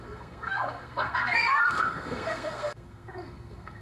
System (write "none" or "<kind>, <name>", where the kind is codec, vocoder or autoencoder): codec, SNAC